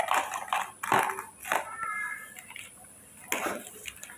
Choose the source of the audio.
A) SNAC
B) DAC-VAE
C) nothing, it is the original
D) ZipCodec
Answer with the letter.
C